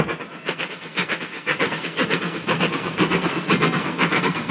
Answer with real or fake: fake